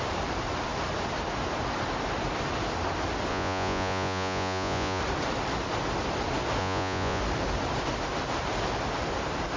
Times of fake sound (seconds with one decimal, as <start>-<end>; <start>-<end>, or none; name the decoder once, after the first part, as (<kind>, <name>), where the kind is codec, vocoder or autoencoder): 3.3-5.0 (vocoder, Vocos); 6.6-7.2